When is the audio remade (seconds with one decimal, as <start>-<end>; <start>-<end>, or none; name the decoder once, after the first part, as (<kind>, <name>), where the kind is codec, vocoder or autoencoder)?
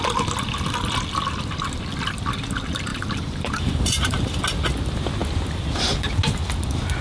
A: 2.9-4.4 (vocoder, BigVGAN v2)